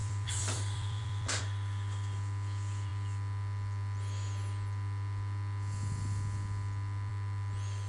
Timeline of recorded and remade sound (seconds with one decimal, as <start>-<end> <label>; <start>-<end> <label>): 0.0-1.4 remade; 1.4-7.9 recorded